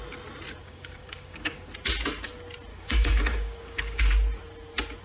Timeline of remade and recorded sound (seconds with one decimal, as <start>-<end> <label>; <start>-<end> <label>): 0.0-0.6 recorded; 0.6-1.7 remade; 1.7-2.7 recorded; 2.7-4.0 remade; 4.0-5.0 recorded